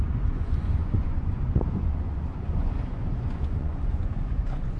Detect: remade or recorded remade